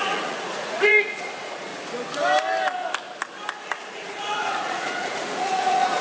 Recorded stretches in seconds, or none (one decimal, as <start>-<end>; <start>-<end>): 1.7-3.7